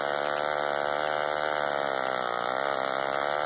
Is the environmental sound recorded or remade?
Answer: recorded